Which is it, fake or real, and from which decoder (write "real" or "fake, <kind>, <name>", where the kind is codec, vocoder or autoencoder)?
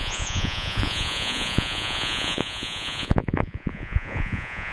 fake, vocoder, Vocos